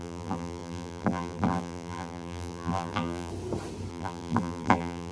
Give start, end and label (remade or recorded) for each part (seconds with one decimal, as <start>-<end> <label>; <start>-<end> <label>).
0.0-3.3 remade; 3.3-3.9 recorded; 3.9-5.1 remade